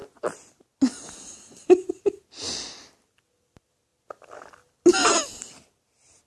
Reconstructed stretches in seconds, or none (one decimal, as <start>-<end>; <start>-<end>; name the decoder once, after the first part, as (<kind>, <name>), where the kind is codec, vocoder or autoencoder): none